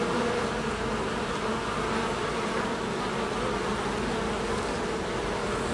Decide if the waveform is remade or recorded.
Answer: recorded